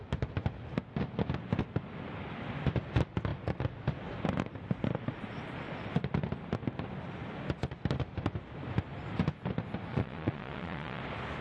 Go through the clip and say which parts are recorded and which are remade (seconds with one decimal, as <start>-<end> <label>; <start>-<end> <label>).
0.0-9.9 recorded; 9.9-11.0 remade; 11.0-11.4 recorded